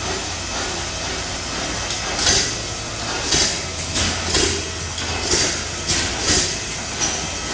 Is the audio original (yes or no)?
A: yes